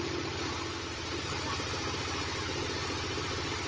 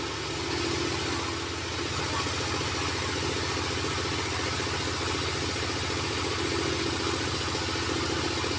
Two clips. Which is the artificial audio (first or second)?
first